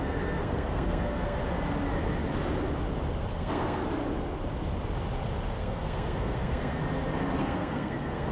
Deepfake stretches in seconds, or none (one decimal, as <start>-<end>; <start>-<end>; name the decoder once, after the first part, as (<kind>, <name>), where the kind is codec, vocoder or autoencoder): 0.0-1.4 (codec, SNAC); 3.3-3.8; 5.6-6.8; 7.4-8.3